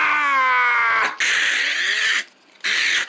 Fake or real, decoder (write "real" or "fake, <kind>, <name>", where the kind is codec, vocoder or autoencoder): real